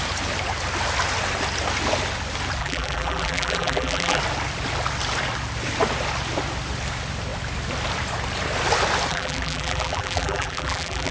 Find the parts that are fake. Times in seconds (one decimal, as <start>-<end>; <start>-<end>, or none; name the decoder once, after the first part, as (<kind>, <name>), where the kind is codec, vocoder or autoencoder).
2.6-4.2 (vocoder, BigVGAN v2); 9.1-11.1